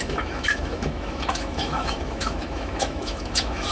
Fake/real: fake